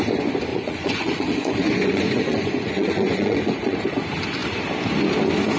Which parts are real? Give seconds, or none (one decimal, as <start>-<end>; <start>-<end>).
0.0-0.5; 3.9-5.6